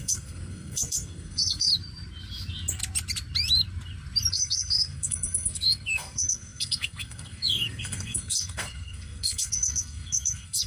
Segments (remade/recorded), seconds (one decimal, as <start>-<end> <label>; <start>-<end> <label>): 0.0-1.7 remade; 1.7-4.3 recorded; 4.3-10.7 remade